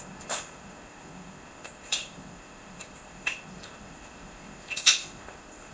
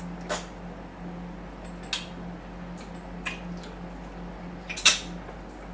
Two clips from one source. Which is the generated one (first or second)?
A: first